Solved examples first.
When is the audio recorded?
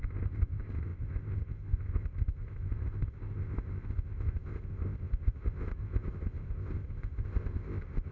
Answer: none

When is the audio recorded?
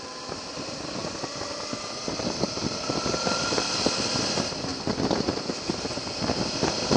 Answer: 0.0-7.0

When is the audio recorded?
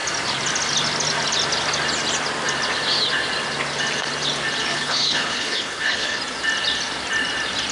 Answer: 0.0-4.7; 6.2-7.7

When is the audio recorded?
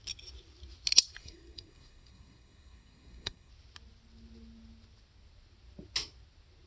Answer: 0.0-1.2; 3.5-6.7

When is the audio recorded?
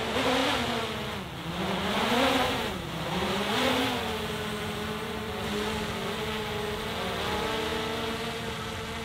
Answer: 0.0-2.0; 3.5-9.0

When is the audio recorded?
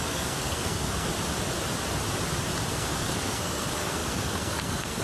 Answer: 1.1-2.7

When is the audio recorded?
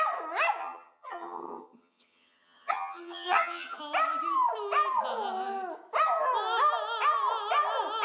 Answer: 0.0-0.6; 3.8-8.0